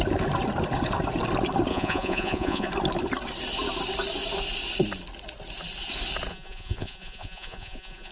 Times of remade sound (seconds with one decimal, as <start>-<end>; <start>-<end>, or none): 1.7-2.7; 6.3-8.1